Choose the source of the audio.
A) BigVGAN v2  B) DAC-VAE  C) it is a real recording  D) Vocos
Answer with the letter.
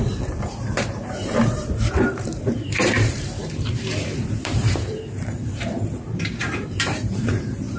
A